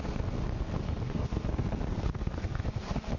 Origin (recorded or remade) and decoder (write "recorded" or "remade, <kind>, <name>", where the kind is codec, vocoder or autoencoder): remade, codec, SNAC